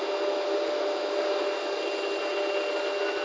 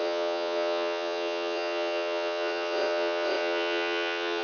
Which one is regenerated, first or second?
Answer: second